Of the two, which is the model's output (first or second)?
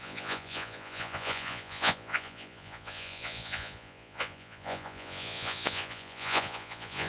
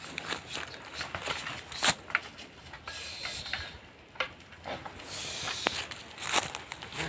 first